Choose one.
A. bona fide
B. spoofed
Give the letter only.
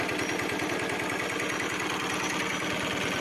A